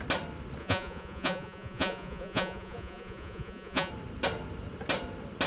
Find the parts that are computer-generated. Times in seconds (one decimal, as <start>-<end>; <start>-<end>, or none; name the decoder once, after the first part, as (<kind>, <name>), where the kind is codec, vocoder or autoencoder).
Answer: 0.6-3.9 (vocoder, Vocos)